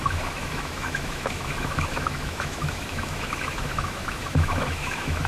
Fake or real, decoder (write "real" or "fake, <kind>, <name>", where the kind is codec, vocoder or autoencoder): fake, autoencoder, DAC-VAE